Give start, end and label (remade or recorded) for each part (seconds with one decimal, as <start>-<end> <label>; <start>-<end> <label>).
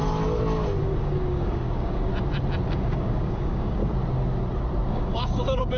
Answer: 0.0-0.8 recorded; 0.8-2.1 remade; 2.1-2.7 recorded; 2.7-3.8 remade; 3.8-4.9 recorded; 4.9-5.8 remade